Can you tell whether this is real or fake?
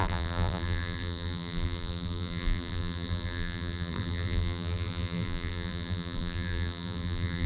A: fake